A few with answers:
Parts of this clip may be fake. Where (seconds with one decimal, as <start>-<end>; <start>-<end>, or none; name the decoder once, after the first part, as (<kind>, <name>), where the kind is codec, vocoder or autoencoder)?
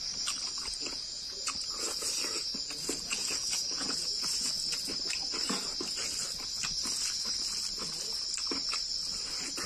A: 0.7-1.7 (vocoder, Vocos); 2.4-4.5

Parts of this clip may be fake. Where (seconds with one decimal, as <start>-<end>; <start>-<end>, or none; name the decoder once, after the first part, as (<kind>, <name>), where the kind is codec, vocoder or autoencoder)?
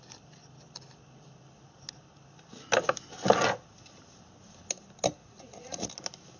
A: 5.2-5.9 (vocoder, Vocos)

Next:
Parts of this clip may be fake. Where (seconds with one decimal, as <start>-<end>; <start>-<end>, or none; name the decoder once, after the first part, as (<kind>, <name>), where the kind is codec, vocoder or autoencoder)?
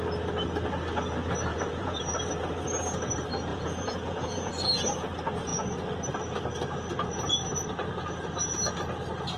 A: 1.5-2.0 (vocoder, Vocos); 3.5-4.5